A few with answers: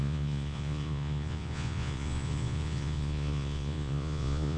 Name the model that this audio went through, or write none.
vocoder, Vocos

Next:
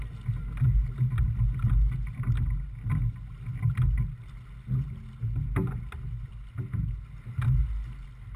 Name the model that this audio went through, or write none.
none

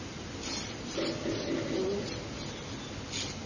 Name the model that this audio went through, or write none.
none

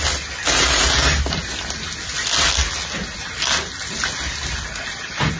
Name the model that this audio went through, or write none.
none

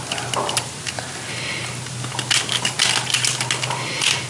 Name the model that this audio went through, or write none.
none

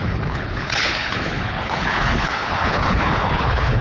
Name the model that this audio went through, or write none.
codec, HILCodec